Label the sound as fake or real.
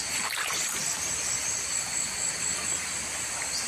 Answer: real